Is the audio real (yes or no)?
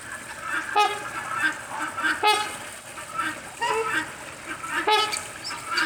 yes